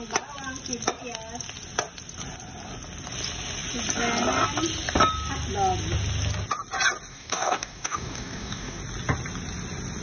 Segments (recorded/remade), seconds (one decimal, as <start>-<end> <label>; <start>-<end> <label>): 0.0-7.1 recorded; 7.1-8.8 remade; 8.8-10.0 recorded